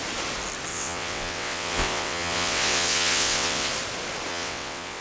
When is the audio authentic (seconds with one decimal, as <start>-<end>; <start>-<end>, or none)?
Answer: 0.0-0.7; 3.7-4.3